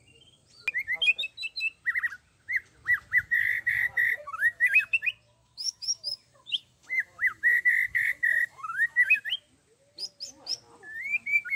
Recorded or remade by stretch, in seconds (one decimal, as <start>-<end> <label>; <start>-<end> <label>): 0.0-3.1 recorded; 3.1-5.0 remade; 5.0-5.4 recorded; 5.4-9.2 remade; 9.2-11.6 recorded